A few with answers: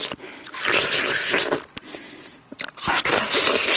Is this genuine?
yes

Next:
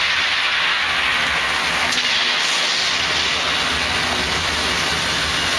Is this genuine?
yes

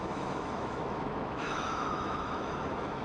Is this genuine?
no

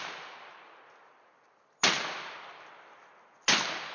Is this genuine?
yes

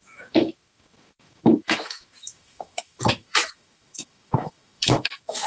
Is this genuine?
no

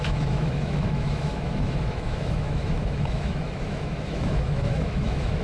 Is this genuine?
no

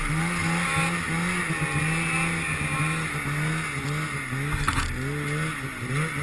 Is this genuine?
yes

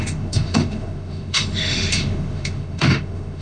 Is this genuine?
no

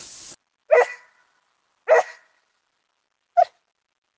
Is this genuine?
yes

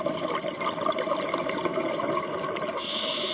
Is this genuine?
yes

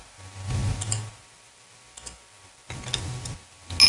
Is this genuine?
yes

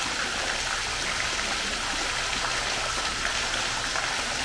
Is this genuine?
yes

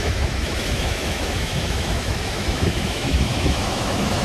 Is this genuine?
no